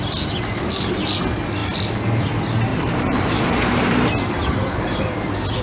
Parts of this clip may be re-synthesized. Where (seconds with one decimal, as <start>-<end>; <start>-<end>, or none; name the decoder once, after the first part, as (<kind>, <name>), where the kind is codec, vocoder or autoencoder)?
2.7-5.0 (vocoder, BigVGAN v2)